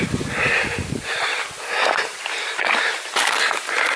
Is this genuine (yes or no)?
yes